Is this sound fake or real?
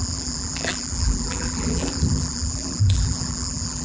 fake